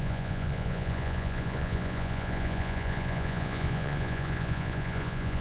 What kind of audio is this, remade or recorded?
remade